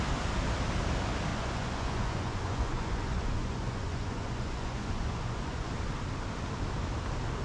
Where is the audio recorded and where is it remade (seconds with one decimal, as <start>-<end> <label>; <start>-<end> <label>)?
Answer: 0.0-1.3 recorded; 1.3-5.7 remade; 5.7-7.4 recorded